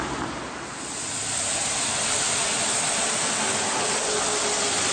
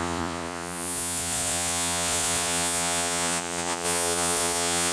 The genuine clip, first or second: first